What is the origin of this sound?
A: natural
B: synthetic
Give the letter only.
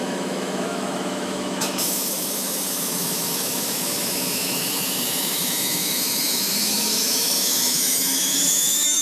B